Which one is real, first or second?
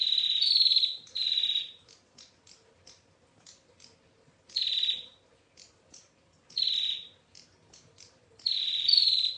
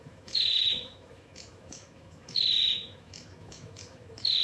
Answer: first